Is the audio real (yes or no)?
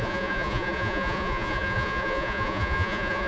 no